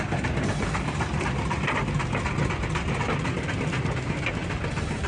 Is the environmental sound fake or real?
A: real